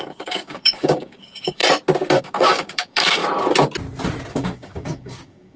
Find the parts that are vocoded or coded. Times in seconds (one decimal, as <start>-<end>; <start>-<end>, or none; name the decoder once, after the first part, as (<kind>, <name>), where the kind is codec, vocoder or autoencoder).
0.0-1.6 (codec, DAC); 2.2-3.2; 4.3-5.6